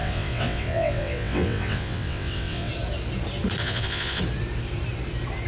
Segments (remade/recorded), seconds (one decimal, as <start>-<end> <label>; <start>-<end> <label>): 0.0-2.7 remade; 2.7-3.6 recorded; 3.6-4.2 remade; 4.2-5.5 recorded